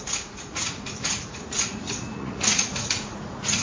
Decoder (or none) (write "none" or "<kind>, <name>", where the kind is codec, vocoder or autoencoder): vocoder, Vocos